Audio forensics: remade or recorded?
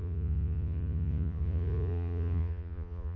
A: remade